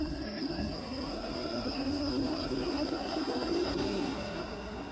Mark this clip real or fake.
fake